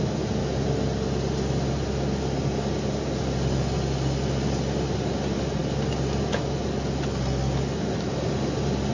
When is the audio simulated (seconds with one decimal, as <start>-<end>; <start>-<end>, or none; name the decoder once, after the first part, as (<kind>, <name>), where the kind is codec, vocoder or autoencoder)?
none